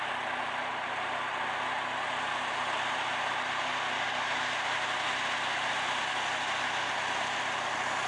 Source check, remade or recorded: recorded